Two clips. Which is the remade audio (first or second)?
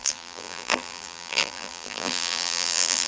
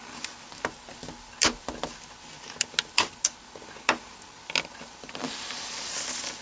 first